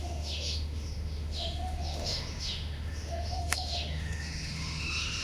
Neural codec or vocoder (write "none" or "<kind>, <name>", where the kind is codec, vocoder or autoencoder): autoencoder, DAC-VAE